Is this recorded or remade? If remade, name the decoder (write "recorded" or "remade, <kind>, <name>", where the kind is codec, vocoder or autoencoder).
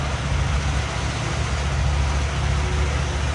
recorded